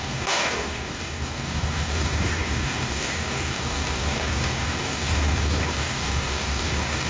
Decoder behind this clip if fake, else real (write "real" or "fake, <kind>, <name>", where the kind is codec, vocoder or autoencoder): fake, codec, DAC